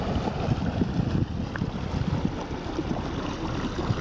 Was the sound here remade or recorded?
recorded